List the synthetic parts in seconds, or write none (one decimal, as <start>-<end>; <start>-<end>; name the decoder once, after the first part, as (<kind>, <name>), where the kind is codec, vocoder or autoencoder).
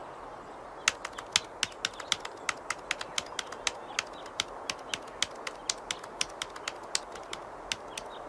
none